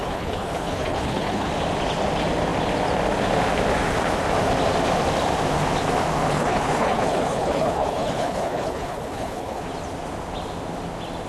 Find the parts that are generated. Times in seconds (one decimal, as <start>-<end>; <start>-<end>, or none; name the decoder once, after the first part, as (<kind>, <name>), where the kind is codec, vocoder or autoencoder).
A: 0.0-1.5 (codec, HILCodec); 6.3-9.6